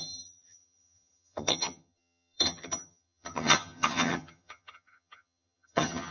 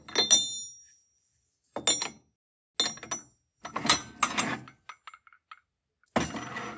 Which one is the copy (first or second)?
first